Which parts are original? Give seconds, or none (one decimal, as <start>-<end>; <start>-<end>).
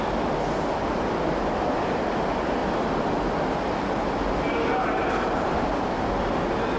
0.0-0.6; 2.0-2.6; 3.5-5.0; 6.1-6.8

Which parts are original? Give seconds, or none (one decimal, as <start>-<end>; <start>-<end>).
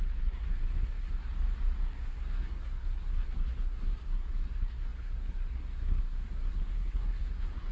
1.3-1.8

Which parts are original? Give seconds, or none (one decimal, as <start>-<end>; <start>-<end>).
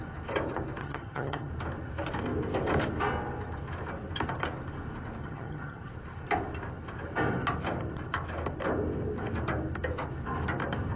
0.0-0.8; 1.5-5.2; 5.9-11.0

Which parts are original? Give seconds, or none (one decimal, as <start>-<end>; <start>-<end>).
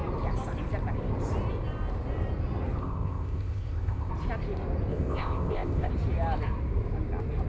0.0-2.8; 4.1-4.9; 5.9-7.5